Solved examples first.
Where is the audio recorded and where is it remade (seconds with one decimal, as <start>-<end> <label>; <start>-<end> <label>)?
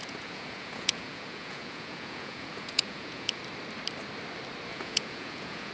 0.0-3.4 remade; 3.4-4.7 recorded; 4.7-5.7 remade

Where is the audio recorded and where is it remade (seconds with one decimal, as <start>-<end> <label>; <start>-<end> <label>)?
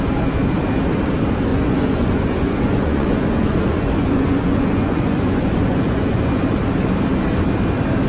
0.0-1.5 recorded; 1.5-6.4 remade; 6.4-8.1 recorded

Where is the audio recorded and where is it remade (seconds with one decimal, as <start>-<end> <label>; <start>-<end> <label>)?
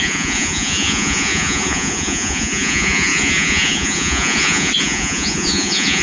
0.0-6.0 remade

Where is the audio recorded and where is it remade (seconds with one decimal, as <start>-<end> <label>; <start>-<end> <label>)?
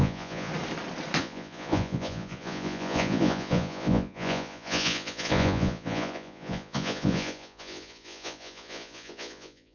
0.0-0.5 remade; 0.5-1.2 recorded; 1.2-9.7 remade